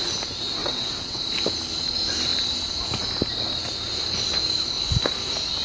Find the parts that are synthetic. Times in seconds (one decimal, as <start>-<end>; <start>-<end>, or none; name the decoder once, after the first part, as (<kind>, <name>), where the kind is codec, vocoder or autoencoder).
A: 0.6-1.2 (vocoder, WaveNeXt)